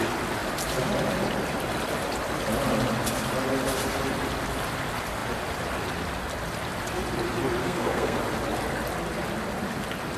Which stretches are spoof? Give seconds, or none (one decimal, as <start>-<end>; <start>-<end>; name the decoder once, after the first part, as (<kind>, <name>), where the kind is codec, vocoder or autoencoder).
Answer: 7.6-8.2 (codec, SNAC)